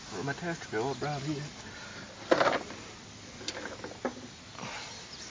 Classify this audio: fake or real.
real